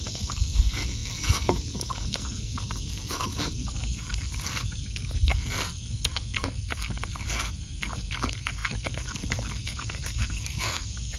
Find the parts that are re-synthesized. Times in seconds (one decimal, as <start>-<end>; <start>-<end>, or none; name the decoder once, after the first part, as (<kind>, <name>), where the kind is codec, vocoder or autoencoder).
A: 0.0-11.2 (codec, SNAC)